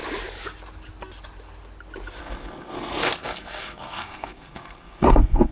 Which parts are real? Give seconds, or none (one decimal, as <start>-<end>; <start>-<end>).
0.0-2.2